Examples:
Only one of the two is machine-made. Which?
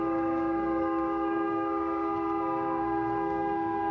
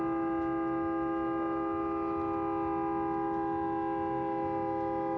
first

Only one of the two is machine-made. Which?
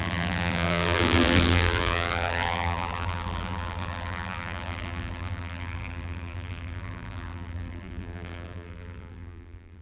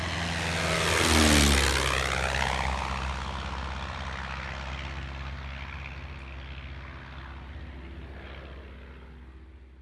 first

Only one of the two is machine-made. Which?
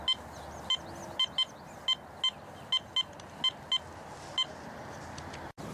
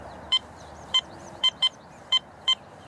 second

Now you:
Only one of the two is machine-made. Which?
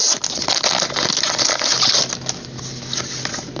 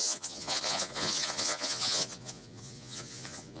second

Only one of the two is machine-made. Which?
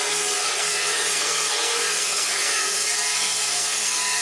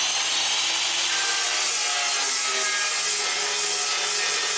first